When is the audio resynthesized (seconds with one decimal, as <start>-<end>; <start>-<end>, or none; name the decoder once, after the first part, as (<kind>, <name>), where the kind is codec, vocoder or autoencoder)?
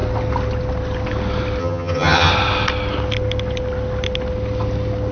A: 1.6-2.3 (vocoder, HiFi-GAN)